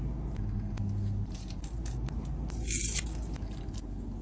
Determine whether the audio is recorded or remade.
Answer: recorded